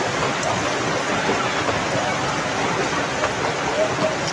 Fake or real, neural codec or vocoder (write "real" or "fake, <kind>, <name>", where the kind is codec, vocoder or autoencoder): real